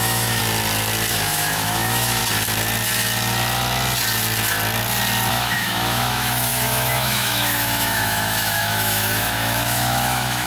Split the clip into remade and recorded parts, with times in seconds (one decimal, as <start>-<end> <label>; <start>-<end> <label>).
0.0-0.4 remade; 0.4-1.1 recorded; 1.1-2.2 remade; 2.2-5.3 recorded; 5.3-10.5 remade